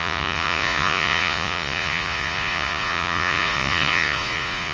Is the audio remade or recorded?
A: remade